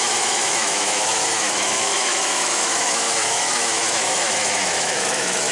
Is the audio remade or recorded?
remade